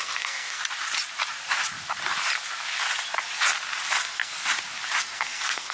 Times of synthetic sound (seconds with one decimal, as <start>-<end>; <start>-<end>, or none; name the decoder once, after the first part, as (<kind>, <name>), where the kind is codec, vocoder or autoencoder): 0.0-0.6 (codec, SNAC); 4.0-4.4; 5.0-5.7